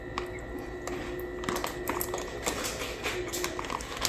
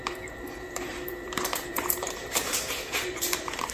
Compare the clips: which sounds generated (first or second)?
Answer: second